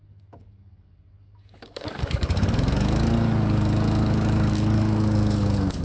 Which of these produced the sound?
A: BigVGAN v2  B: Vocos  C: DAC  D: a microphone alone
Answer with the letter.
C